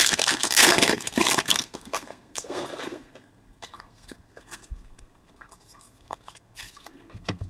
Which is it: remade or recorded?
remade